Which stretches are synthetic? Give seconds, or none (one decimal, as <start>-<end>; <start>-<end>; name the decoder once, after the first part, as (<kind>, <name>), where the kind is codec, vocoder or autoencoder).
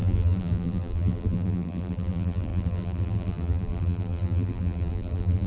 0.0-5.5 (vocoder, BigVGAN v2)